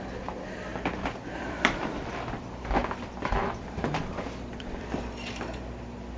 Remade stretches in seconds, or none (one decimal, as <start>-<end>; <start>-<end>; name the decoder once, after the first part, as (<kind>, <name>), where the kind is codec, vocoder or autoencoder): 0.7-2.1 (vocoder, BigVGAN v2); 2.8-5.3